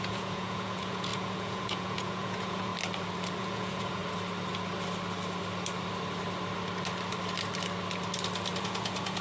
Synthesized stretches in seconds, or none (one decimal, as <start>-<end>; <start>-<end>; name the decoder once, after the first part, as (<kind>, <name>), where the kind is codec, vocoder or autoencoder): 0.0-2.7 (vocoder, Vocos); 3.4-4.0; 8.6-9.2